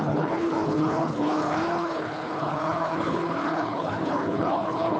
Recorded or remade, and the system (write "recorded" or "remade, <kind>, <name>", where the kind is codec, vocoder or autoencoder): remade, codec, HILCodec